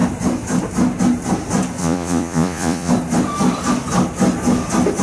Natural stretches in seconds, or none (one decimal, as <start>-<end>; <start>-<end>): 0.0-1.8; 2.9-5.0